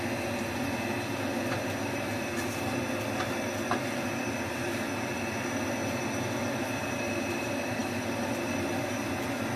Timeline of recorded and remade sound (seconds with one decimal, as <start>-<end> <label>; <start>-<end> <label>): 0.0-9.6 recorded